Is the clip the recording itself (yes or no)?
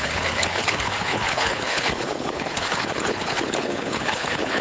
no